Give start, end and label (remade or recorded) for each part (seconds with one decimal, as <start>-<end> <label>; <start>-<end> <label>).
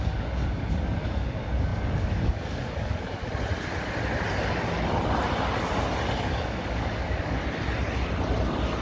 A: 0.0-3.2 remade; 3.2-6.2 recorded; 6.2-7.4 remade; 7.4-8.8 recorded